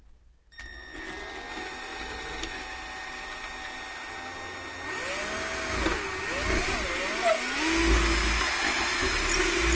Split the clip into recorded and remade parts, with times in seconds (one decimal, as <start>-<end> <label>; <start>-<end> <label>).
0.0-9.8 recorded